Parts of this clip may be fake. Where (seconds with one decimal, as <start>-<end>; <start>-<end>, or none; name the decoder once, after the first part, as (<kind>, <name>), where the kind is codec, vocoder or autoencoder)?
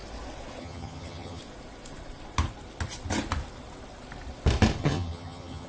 0.6-1.4 (vocoder, HiFi-GAN); 4.8-5.7